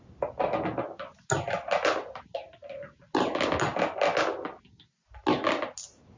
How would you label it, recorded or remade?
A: recorded